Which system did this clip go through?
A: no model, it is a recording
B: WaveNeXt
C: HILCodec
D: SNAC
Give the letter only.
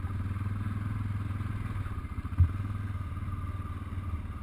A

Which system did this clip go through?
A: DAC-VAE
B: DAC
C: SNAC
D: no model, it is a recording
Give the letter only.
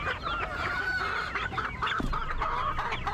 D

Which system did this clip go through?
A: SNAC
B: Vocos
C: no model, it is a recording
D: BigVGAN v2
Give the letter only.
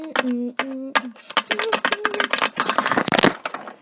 C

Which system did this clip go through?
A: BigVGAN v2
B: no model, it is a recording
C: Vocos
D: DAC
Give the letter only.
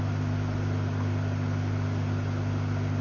B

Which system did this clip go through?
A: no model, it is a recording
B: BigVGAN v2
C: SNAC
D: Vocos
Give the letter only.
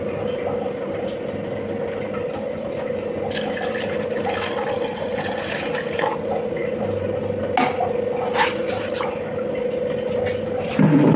A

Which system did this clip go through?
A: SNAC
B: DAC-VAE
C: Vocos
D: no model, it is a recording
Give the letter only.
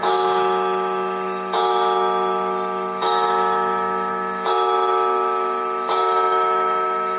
B